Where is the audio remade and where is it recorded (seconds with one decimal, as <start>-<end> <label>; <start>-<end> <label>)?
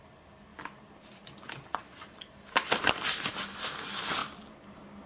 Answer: 0.0-5.1 recorded